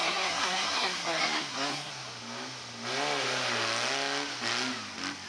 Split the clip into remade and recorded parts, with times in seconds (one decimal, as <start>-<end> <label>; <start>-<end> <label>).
0.0-1.9 remade; 1.9-5.3 recorded